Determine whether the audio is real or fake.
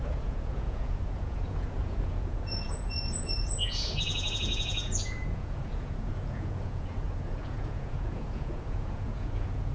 fake